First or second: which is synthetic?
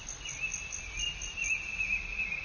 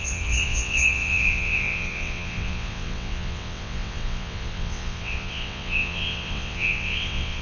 second